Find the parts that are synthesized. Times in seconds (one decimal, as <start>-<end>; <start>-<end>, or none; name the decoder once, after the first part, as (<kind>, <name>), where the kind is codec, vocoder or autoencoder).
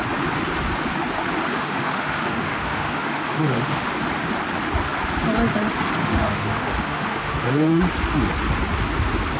1.5-3.9 (autoencoder, DAC-VAE); 6.0-7.8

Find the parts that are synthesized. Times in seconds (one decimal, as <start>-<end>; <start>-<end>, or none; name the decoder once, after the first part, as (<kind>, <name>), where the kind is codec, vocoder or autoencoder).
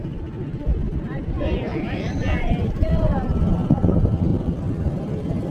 1.1-3.4 (vocoder, BigVGAN v2); 4.3-5.5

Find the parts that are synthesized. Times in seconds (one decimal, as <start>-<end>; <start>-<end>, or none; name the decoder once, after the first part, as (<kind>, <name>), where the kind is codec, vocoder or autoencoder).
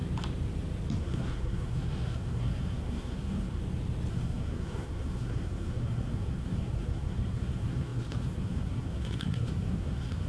1.0-3.6 (codec, SNAC); 4.1-10.3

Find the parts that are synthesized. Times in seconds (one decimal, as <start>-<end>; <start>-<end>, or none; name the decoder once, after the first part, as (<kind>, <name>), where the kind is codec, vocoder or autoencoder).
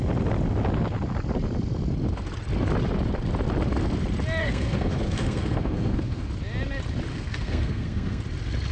4.4-6.3 (codec, SNAC); 7.1-8.2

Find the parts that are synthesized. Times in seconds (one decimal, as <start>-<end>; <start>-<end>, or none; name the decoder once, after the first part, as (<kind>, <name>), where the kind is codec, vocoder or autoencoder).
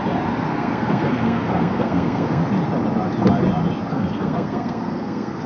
0.5-2.4 (codec, SNAC); 3.9-5.5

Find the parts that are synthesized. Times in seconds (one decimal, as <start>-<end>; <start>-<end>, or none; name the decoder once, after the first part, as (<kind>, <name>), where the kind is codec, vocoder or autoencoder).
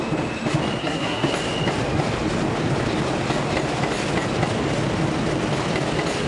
0.8-1.3 (codec, SNAC)